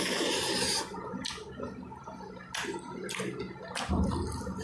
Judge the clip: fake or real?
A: real